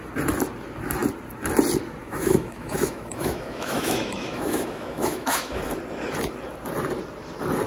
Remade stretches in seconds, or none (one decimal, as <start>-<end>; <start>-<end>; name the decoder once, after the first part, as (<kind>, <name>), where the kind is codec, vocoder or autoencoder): 2.0-5.6 (autoencoder, DAC-VAE)